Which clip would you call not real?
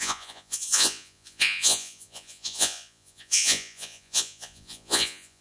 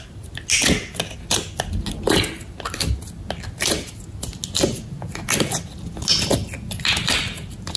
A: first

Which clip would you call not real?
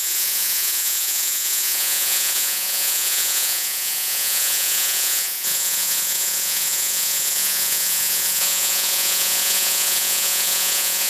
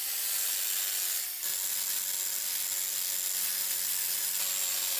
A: first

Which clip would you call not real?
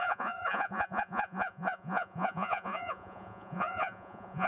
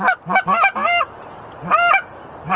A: first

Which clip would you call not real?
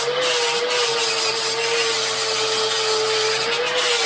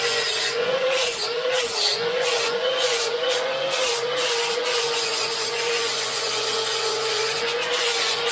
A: second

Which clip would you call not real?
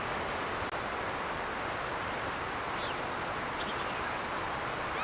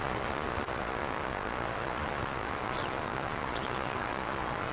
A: second